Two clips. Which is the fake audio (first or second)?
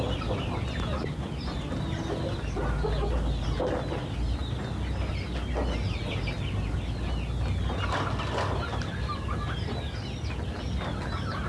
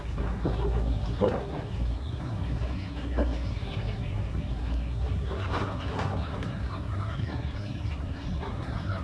second